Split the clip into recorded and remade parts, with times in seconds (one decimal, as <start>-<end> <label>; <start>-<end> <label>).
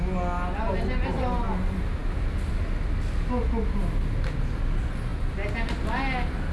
0.0-6.5 recorded